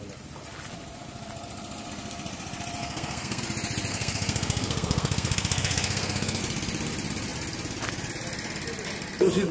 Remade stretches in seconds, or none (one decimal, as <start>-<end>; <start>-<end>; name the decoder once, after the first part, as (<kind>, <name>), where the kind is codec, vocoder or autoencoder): 2.8-3.4 (codec, SNAC); 3.9-6.4